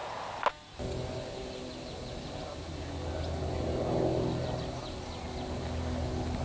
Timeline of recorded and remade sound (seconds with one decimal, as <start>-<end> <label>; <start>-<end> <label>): 0.0-6.4 recorded